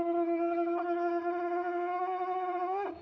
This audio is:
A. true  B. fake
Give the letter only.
A